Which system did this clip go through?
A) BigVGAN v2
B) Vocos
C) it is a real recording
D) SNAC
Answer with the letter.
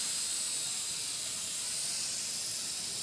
C